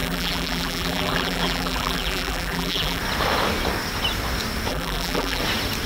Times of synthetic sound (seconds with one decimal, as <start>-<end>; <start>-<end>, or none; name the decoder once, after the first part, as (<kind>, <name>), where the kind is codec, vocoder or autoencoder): 0.0-3.0 (vocoder, BigVGAN v2); 4.7-5.4